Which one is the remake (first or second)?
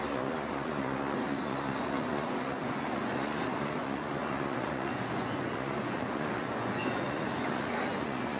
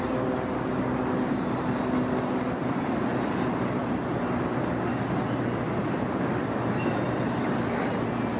first